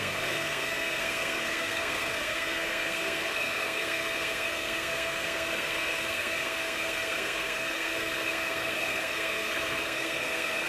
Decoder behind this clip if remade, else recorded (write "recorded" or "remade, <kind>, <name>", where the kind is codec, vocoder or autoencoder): remade, codec, SNAC